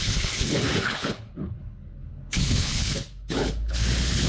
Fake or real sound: fake